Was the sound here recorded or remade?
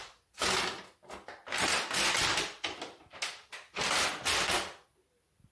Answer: recorded